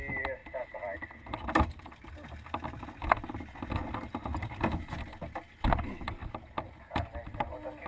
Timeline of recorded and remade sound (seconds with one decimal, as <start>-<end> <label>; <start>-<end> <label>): 0.0-7.9 recorded